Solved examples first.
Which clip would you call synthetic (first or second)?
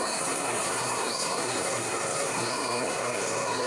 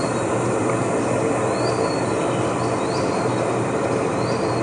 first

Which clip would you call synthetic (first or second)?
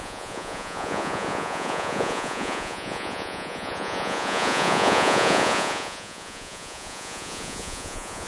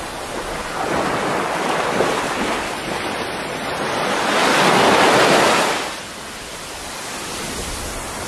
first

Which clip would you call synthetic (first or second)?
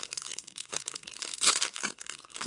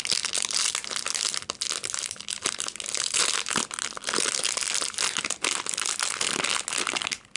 first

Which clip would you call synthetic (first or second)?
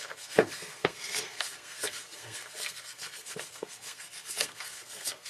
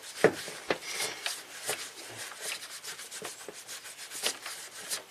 first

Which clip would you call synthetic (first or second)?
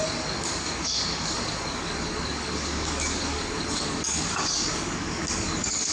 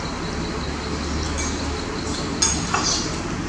first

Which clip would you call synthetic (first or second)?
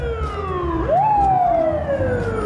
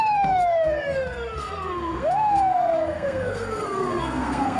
second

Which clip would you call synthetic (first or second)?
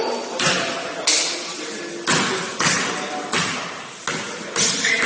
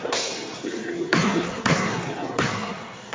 second